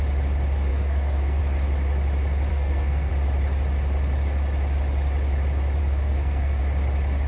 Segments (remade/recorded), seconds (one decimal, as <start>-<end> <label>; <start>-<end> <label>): 0.0-0.7 recorded; 0.7-1.4 remade; 1.4-2.5 recorded; 2.5-3.1 remade; 3.1-5.8 recorded; 5.8-6.6 remade; 6.6-7.3 recorded

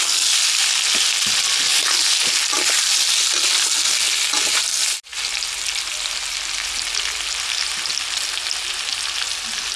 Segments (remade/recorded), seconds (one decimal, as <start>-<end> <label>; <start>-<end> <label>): 0.0-9.8 recorded

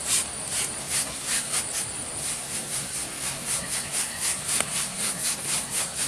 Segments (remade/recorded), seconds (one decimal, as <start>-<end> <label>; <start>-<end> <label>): 0.0-0.8 recorded; 0.8-1.6 remade; 1.6-2.2 recorded; 2.2-6.1 remade